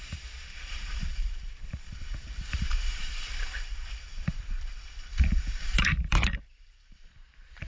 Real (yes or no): no